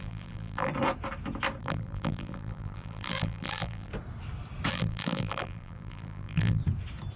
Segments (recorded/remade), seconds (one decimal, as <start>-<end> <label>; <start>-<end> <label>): 0.0-0.7 remade; 0.7-1.6 recorded; 1.6-3.9 remade; 3.9-4.7 recorded; 4.7-6.6 remade; 6.6-7.2 recorded